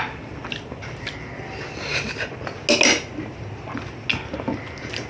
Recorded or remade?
recorded